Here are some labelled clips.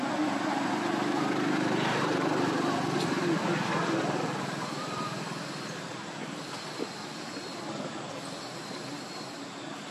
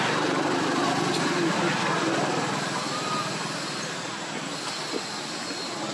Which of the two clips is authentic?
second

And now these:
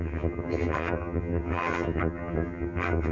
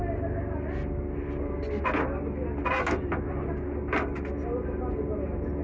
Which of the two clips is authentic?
second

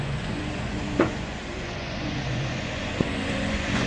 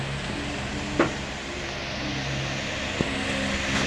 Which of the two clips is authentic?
second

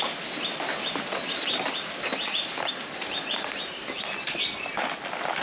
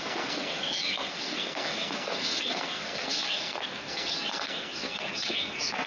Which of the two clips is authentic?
first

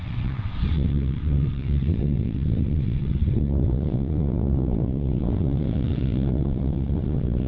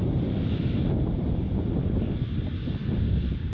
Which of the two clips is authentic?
second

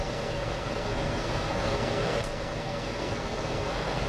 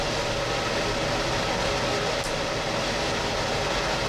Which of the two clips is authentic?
second